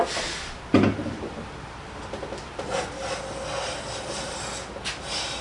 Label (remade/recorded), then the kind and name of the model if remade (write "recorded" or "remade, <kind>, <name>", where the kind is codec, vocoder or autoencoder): recorded